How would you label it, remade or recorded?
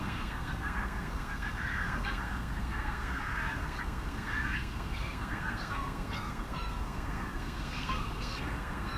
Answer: remade